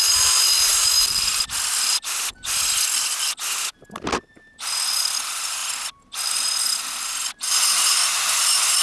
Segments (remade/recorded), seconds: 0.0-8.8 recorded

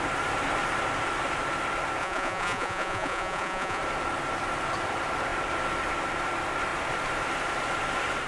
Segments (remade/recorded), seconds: 0.0-2.0 recorded; 2.0-3.8 remade; 3.8-8.3 recorded

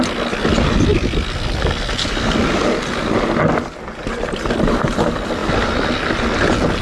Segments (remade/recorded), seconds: 0.0-6.8 recorded

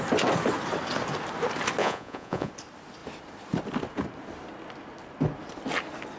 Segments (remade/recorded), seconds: 0.0-1.8 recorded; 1.8-2.5 remade; 2.5-6.2 recorded

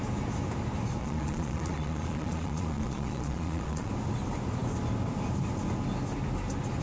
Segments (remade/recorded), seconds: 0.0-1.0 recorded; 1.0-3.9 remade; 3.9-6.8 recorded

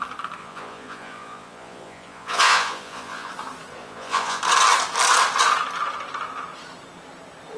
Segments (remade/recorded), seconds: 0.0-0.4 recorded; 0.4-3.3 remade; 3.3-3.8 recorded; 3.8-4.4 remade; 4.4-7.6 recorded